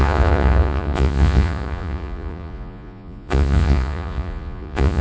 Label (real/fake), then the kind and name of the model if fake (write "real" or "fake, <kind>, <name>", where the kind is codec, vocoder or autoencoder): fake, vocoder, Vocos